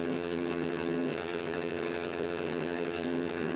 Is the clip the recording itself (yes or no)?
no